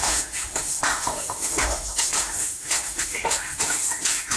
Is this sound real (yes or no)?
no